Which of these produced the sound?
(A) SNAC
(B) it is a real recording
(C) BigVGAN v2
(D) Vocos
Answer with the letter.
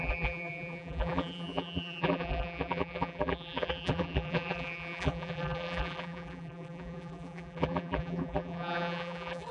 C